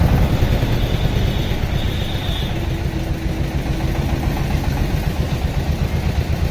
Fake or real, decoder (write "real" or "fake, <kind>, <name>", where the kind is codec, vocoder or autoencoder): real